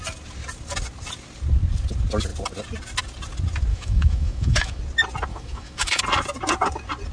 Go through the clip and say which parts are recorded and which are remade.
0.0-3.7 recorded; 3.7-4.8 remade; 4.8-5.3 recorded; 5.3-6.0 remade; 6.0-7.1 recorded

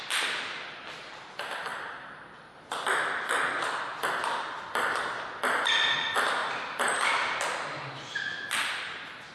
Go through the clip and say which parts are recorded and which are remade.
0.0-4.2 recorded; 4.2-5.1 remade; 5.1-6.4 recorded; 6.4-7.4 remade; 7.4-9.3 recorded